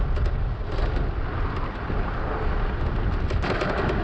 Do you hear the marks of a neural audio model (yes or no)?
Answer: no